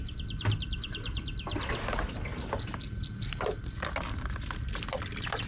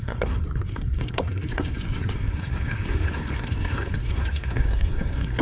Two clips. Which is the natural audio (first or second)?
first